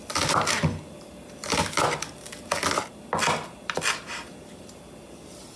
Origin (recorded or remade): recorded